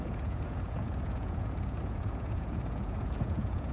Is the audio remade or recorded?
remade